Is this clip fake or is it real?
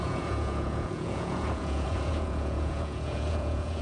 fake